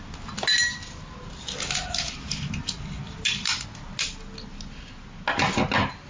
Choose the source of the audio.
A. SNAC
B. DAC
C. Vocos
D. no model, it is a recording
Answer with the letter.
D